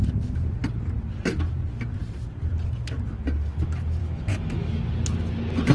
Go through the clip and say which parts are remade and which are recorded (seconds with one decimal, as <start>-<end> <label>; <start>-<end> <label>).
0.0-4.0 recorded; 4.0-4.8 remade; 4.8-5.7 recorded